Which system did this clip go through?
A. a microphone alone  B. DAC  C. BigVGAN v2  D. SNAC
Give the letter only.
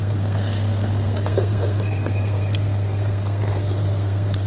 D